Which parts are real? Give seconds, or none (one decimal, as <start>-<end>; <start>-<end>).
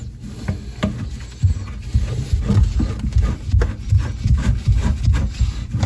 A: 0.0-5.9